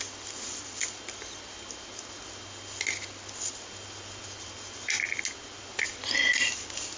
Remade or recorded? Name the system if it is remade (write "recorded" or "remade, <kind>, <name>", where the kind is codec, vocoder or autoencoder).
recorded